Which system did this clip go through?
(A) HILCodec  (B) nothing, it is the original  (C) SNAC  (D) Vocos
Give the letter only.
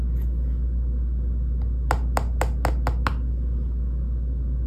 B